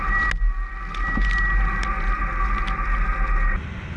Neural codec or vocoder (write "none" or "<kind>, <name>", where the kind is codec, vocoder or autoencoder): none